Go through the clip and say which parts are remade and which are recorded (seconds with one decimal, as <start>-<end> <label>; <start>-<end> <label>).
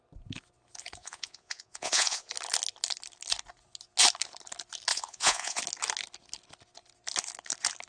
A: 0.0-1.0 recorded; 1.0-2.3 remade; 2.3-4.9 recorded; 4.9-5.6 remade; 5.6-7.9 recorded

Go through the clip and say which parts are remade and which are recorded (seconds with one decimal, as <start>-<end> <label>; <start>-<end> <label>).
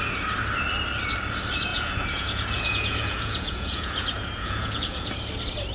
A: 0.0-1.7 recorded; 1.7-5.1 remade; 5.1-5.7 recorded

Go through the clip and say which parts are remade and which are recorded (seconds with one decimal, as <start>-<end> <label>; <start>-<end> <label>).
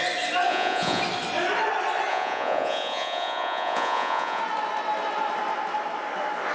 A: 0.0-0.5 recorded; 0.5-1.0 remade; 1.0-2.1 recorded; 2.1-4.4 remade; 4.4-6.5 recorded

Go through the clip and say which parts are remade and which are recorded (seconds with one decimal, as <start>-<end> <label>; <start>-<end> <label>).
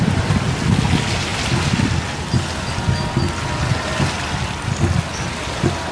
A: 0.0-5.9 recorded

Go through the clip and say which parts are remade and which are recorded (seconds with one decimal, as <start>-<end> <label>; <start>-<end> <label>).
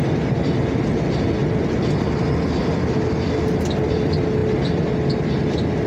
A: 0.0-5.9 recorded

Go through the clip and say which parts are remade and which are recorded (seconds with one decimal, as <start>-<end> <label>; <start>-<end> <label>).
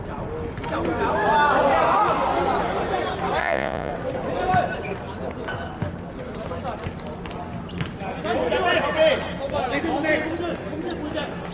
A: 0.0-3.4 recorded; 3.4-3.9 remade; 3.9-11.5 recorded